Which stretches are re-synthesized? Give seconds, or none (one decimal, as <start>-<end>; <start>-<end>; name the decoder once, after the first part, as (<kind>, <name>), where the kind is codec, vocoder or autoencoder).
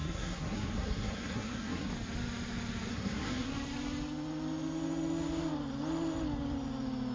0.0-1.9 (codec, SNAC); 2.9-3.5